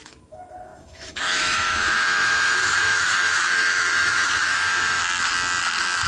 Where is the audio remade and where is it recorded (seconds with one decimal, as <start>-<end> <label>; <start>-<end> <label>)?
0.0-5.0 remade; 5.0-6.1 recorded